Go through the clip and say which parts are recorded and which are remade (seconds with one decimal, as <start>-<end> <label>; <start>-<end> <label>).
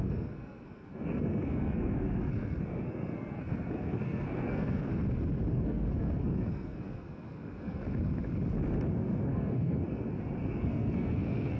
0.0-4.9 remade; 4.9-5.5 recorded; 5.5-7.8 remade; 7.8-8.9 recorded; 8.9-11.6 remade